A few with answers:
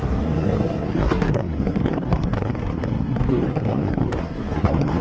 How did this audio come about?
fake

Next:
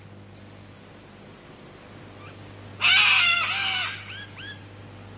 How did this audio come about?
real